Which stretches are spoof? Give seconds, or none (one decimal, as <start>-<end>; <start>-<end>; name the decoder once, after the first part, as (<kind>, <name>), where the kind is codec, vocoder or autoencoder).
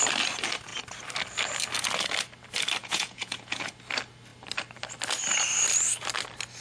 2.8-3.7 (vocoder, Vocos)